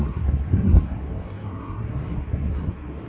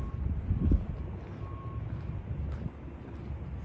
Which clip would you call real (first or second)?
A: second